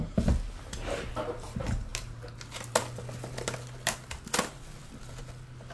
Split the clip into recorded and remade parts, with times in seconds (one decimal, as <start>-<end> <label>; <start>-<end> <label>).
0.0-5.7 recorded